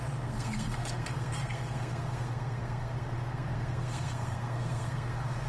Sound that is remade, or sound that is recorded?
remade